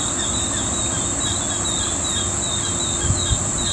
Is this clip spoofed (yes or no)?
no